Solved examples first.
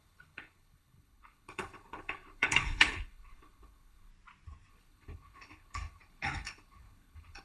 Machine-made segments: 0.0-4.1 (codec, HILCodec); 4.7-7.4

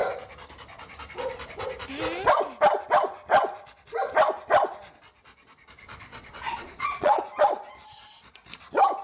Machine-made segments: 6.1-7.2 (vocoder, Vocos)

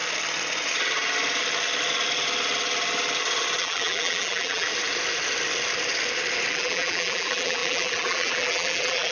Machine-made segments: 3.6-4.7 (vocoder, BigVGAN v2); 6.5-9.1

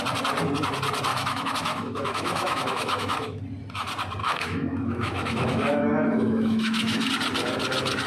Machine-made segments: 1.1-3.4 (autoencoder, DAC-VAE); 4.2-7.1

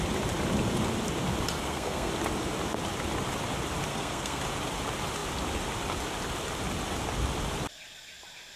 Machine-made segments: 1.6-2.1 (codec, SNAC); 3.9-4.4

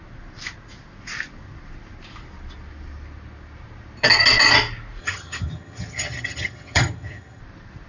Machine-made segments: 5.0-7.4 (vocoder, HiFi-GAN)